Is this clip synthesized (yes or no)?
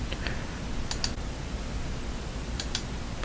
no